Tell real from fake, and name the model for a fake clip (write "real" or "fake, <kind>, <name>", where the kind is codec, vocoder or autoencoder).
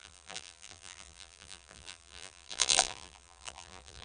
fake, vocoder, BigVGAN v2